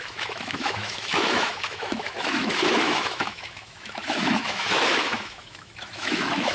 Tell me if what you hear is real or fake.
fake